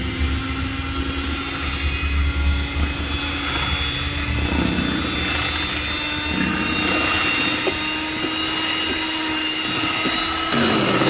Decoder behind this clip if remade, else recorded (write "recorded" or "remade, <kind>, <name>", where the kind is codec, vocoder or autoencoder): recorded